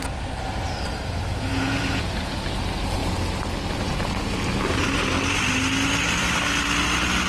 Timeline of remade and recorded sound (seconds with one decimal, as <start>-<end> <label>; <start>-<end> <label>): 0.0-1.5 recorded; 1.5-2.4 remade; 2.4-7.3 recorded